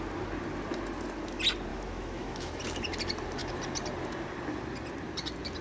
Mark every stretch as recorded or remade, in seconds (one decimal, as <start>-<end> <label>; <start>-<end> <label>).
0.0-1.7 recorded; 1.7-2.6 remade; 2.6-5.6 recorded